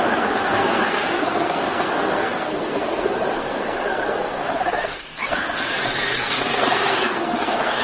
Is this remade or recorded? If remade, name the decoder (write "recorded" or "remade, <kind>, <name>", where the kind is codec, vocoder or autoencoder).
remade, codec, SNAC